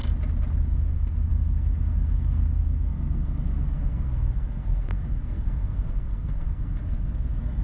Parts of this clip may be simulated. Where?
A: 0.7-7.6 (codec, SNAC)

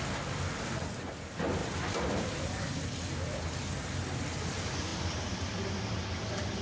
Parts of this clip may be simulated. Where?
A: 1.6-2.6 (vocoder, BigVGAN v2)

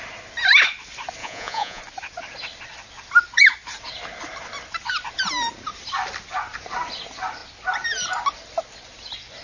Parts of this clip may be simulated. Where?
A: 1.2-1.8 (vocoder, Vocos)

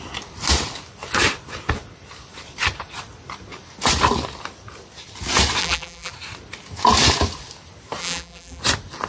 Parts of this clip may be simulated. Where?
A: 5.6-6.1 (vocoder, BigVGAN v2); 8.0-8.6

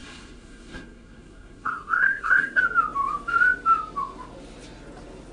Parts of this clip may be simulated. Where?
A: 0.0-2.6 (codec, SNAC)

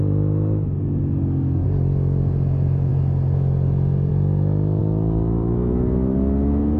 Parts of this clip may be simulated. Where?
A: none

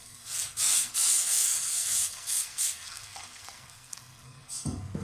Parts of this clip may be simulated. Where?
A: 0.0-5.0 (codec, SNAC)

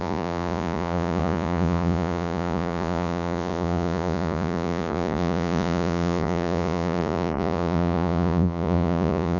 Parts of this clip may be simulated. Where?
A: 0.0-9.4 (vocoder, Vocos)